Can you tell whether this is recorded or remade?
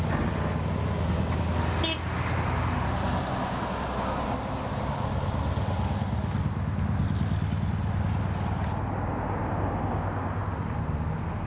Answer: recorded